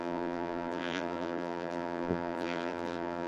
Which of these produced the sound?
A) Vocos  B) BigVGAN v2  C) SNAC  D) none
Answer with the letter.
B